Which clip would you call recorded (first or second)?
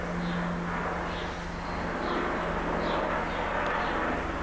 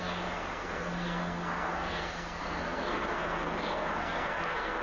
first